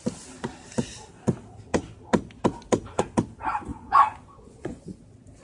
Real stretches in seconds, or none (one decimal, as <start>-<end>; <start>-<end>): 0.0-3.7; 4.8-5.4